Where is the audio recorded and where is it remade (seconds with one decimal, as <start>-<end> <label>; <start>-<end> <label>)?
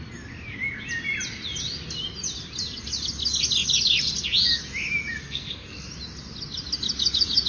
0.0-5.2 recorded; 5.2-5.8 remade; 5.8-7.5 recorded